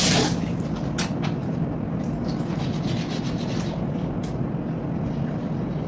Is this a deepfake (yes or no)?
no